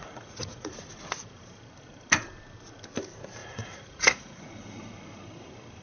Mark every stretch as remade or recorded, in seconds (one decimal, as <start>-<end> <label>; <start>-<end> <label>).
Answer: 0.0-0.7 remade; 0.7-3.4 recorded; 3.4-4.4 remade; 4.4-5.8 recorded